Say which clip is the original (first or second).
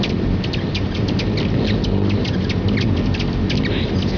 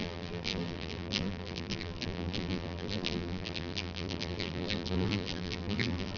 first